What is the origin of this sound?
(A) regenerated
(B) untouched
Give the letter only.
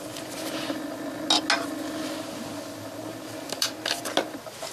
B